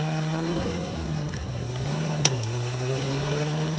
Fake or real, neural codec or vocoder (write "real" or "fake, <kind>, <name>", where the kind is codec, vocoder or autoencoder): fake, codec, SNAC